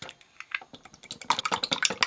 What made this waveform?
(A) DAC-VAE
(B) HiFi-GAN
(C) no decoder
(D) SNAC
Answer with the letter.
C